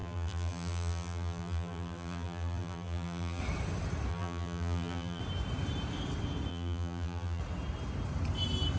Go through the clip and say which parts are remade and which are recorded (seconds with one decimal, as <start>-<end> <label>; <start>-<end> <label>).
0.0-3.4 remade; 3.4-4.1 recorded; 4.1-5.2 remade; 5.2-6.5 recorded; 6.5-7.4 remade; 7.4-8.8 recorded